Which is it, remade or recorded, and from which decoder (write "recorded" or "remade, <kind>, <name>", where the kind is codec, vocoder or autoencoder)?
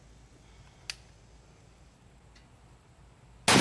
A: recorded